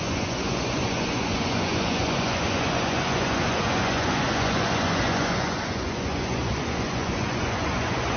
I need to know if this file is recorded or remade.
remade